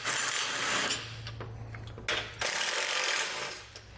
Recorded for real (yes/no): yes